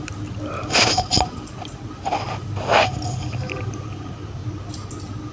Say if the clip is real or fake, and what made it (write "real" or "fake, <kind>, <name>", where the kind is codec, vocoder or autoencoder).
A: real